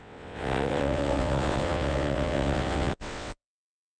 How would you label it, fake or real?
fake